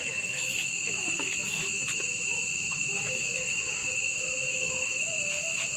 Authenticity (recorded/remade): remade